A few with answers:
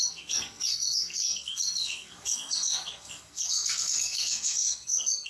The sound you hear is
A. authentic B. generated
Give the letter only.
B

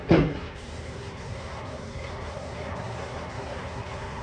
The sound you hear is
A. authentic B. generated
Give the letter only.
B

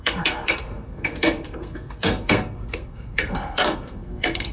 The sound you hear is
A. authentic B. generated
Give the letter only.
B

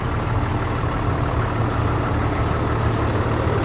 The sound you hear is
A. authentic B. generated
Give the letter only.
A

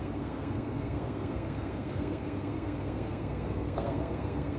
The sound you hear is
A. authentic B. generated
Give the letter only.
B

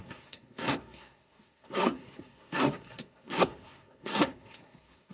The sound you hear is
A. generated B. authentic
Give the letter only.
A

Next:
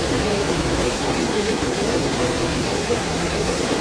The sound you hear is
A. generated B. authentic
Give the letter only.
A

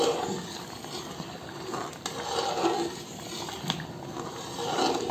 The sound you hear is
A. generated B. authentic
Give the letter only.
B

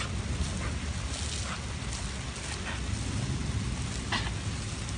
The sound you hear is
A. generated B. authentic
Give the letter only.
B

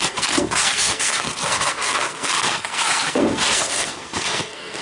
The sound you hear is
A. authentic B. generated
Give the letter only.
B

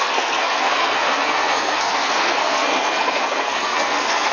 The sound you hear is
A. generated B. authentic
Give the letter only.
A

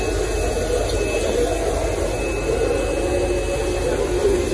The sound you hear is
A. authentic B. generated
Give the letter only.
A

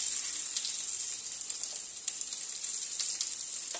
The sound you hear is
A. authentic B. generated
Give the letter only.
A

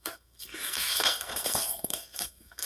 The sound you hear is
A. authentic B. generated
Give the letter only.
B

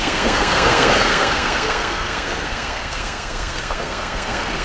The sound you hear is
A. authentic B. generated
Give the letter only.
B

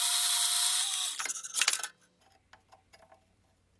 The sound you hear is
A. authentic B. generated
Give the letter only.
A